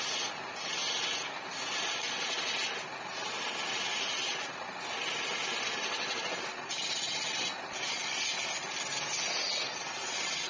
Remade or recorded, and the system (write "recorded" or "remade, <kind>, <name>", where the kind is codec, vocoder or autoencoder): recorded